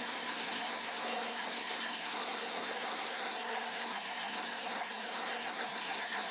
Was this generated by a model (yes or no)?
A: yes